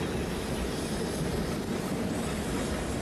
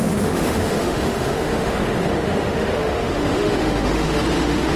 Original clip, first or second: first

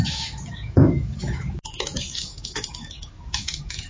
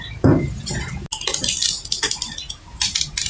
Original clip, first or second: second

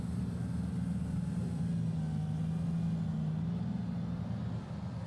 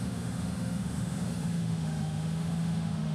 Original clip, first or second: first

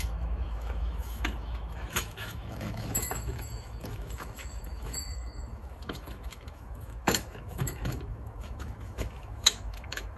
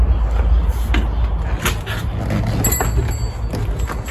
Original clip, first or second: second